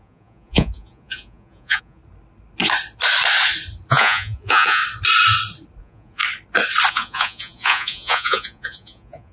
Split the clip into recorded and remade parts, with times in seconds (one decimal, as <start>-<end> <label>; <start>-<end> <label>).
0.0-2.0 remade; 2.0-3.9 recorded; 3.9-4.8 remade; 4.8-5.8 recorded; 5.8-6.2 remade; 6.2-6.9 recorded; 6.9-9.3 remade